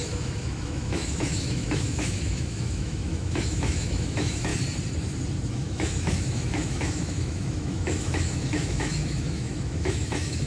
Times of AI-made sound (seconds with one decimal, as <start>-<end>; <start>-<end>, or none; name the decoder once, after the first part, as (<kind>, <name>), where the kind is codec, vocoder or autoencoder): 0.0-4.5 (autoencoder, DAC-VAE); 5.5-10.5